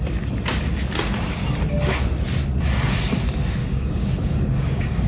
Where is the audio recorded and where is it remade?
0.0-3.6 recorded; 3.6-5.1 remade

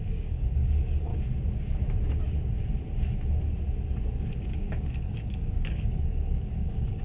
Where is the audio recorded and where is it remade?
0.0-1.1 remade; 1.1-4.4 recorded; 4.4-7.0 remade

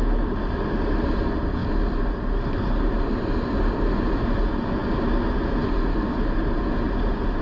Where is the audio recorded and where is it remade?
0.0-7.4 recorded

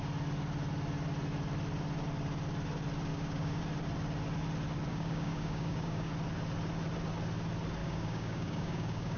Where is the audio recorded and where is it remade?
0.0-3.1 recorded; 3.1-3.6 remade; 3.6-4.9 recorded; 4.9-6.1 remade; 6.1-7.8 recorded; 7.8-9.2 remade